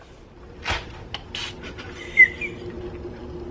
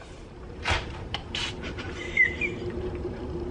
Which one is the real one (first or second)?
first